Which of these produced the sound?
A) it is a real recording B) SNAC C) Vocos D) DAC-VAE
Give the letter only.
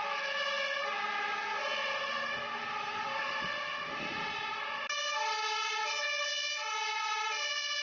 A